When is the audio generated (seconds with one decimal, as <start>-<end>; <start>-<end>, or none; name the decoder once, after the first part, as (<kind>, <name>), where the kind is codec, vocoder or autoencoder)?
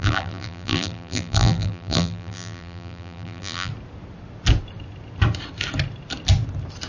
0.0-3.7 (vocoder, BigVGAN v2)